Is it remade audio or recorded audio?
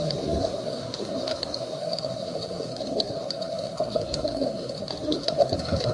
remade